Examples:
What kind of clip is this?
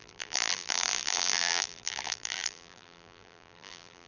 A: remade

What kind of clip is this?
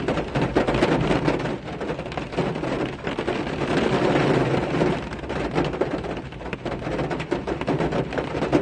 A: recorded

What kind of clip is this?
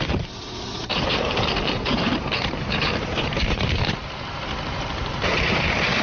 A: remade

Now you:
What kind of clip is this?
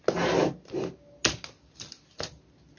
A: recorded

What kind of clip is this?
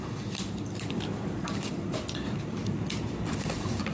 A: remade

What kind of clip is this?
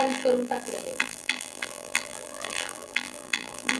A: remade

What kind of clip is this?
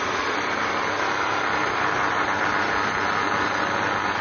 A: remade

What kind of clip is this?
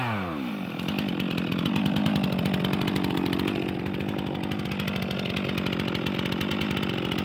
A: remade